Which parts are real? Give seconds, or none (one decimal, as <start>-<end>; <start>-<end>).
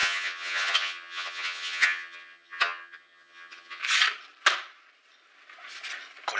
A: 3.8-6.4